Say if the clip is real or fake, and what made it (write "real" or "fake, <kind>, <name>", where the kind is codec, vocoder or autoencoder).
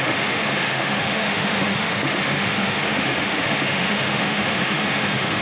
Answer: fake, autoencoder, DAC-VAE